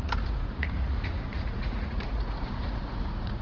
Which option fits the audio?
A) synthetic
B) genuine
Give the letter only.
A